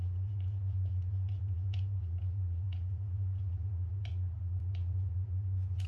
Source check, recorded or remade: remade